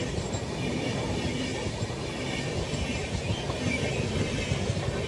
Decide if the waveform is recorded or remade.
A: recorded